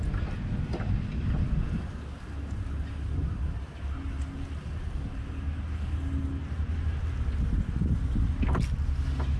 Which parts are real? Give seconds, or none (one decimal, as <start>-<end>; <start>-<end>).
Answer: 0.0-9.4

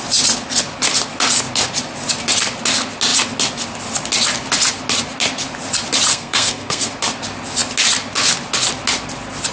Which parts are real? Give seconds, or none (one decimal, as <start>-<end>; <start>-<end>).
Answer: 0.0-6.1; 6.9-9.5

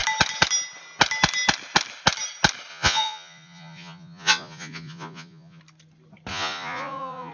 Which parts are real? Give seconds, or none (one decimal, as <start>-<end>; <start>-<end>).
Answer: 0.0-2.7; 5.6-6.3

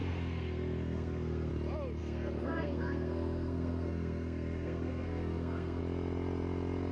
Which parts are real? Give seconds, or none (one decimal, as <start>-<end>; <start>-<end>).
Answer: 1.5-2.0; 5.8-6.9

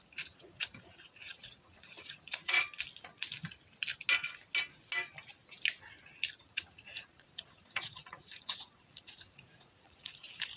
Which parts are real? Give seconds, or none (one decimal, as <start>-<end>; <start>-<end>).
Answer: 2.6-6.4

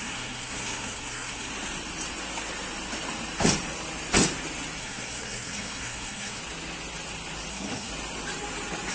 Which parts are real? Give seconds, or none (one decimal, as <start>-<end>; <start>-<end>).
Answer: 1.5-4.8; 6.4-7.5; 7.9-8.9

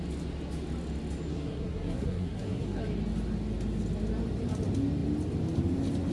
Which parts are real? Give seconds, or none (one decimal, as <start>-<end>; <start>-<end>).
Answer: 0.0-1.3; 2.8-6.1

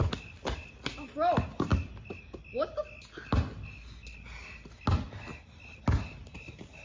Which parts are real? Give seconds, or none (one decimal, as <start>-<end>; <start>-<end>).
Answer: 0.0-6.8